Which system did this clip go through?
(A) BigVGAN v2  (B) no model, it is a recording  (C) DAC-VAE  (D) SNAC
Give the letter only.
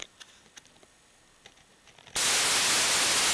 B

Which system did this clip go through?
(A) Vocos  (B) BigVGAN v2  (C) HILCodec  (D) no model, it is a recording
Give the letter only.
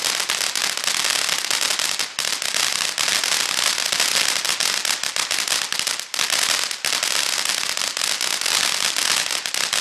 D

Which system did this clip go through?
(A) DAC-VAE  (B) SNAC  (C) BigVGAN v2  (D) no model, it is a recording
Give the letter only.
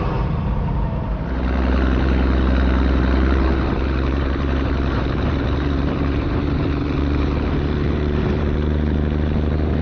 C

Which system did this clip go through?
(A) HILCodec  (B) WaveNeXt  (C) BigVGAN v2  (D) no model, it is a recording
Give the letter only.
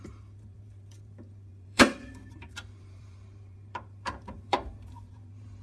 C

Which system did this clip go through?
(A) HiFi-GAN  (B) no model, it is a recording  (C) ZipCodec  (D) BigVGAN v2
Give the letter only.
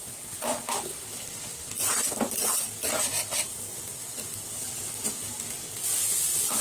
B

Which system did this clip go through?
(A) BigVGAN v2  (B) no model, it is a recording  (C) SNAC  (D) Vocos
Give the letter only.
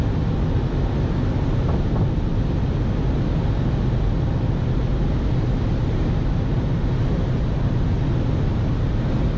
B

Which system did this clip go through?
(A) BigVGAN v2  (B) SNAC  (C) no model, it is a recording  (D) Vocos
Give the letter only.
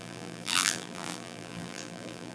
A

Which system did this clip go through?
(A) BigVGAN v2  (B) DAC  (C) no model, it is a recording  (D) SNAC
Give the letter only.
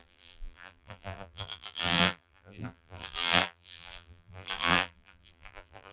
A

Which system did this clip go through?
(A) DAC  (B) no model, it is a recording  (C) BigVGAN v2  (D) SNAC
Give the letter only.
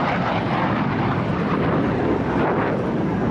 C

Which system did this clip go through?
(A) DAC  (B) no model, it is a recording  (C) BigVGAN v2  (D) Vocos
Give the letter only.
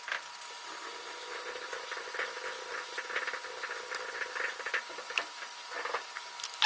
B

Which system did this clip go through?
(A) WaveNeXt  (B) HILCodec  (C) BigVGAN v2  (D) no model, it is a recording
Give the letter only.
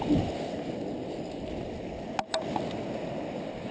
D